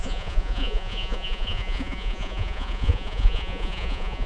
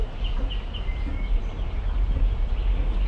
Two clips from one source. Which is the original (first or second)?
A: second